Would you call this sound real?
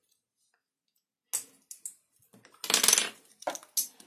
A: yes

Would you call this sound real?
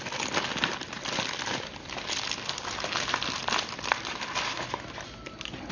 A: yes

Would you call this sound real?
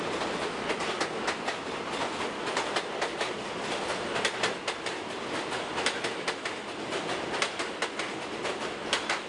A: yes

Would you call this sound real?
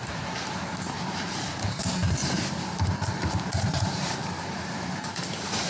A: no